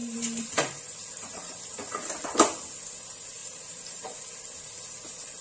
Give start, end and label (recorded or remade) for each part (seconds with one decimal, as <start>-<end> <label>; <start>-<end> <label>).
0.0-2.1 remade; 2.1-3.4 recorded; 3.4-4.4 remade; 4.4-5.4 recorded